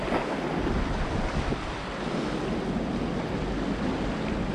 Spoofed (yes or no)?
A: no